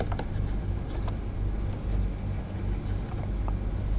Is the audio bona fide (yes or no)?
yes